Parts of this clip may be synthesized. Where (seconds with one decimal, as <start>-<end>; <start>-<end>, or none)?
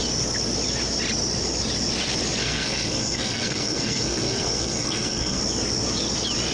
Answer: 2.4-5.4